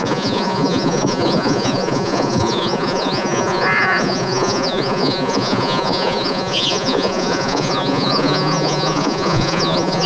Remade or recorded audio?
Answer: remade